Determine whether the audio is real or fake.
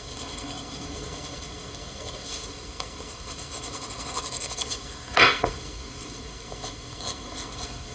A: fake